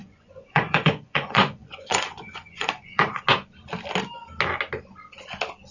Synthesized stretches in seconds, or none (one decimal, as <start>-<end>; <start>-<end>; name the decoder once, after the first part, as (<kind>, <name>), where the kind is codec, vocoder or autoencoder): 0.0-3.2 (vocoder, Vocos)